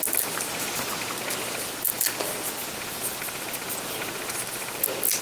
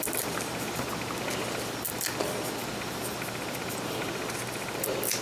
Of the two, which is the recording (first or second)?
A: first